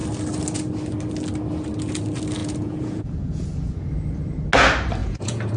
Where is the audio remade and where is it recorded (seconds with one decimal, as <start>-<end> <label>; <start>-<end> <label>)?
0.0-2.4 recorded; 2.4-3.9 remade; 3.9-5.0 recorded; 5.0-5.6 remade